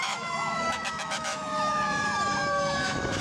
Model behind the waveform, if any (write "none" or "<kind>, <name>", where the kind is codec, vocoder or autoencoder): autoencoder, DAC-VAE